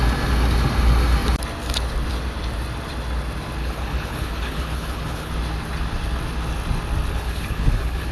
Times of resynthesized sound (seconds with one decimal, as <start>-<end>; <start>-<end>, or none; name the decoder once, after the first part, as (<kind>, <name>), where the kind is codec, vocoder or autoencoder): 3.6-5.3 (codec, HILCodec); 7.1-8.1